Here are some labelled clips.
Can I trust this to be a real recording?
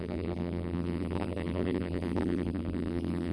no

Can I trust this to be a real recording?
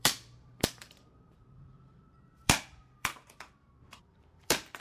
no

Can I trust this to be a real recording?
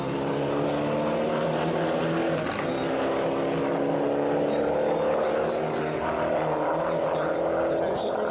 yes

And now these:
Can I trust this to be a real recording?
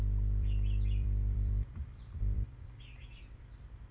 no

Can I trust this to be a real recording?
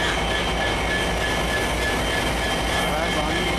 yes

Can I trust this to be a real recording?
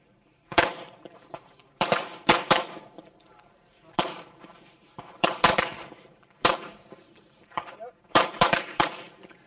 no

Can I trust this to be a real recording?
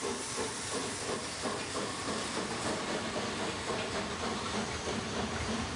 no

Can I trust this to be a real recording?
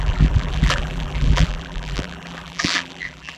no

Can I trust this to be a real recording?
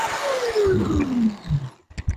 yes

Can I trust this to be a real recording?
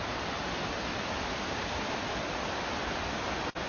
yes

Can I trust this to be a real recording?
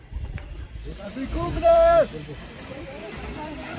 no